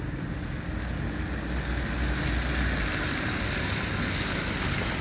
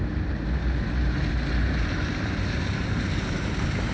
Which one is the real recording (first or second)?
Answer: first